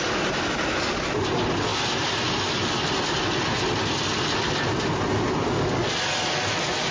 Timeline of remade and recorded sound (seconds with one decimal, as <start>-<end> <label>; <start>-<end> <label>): 0.0-6.9 recorded